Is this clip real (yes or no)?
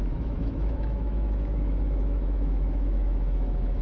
no